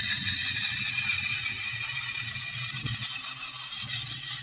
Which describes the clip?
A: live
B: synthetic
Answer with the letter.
A